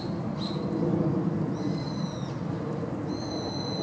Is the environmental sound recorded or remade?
recorded